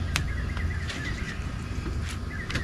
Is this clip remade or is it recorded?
recorded